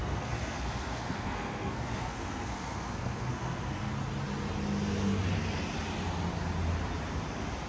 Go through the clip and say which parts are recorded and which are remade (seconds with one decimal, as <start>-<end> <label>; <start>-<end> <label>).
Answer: 0.0-3.9 remade; 3.9-7.7 recorded